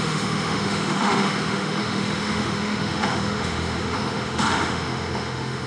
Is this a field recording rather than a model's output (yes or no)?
no